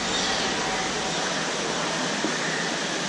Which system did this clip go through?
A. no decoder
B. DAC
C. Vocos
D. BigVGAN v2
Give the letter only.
A